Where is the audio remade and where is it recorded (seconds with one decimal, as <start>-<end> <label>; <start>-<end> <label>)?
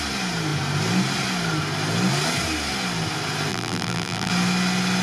0.0-3.5 recorded; 3.5-4.3 remade; 4.3-5.0 recorded